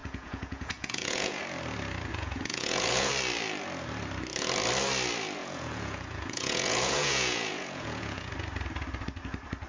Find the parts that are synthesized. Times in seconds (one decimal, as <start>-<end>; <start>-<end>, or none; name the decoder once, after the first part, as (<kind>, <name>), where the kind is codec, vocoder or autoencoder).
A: 0.0-1.4 (vocoder, Vocos); 2.1-3.1; 5.4-8.3